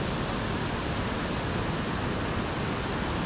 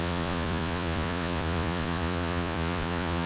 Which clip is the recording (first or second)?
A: first